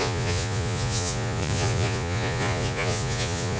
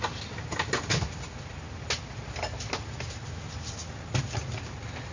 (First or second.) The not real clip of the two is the first